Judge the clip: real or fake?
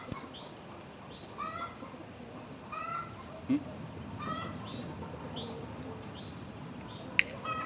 real